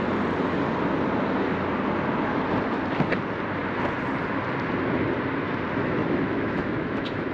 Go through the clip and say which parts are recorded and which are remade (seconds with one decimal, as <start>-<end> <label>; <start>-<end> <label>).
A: 0.0-6.0 recorded; 6.0-7.3 remade